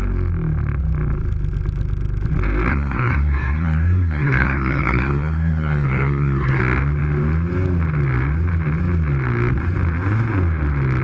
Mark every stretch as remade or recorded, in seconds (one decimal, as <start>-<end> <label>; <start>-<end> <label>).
0.0-2.7 recorded; 2.7-6.6 remade; 6.6-11.0 recorded